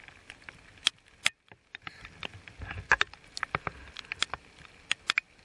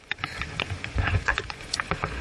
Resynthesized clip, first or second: second